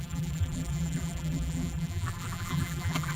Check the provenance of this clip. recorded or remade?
remade